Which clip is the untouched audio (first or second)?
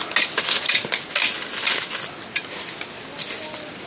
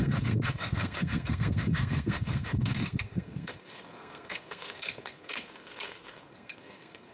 first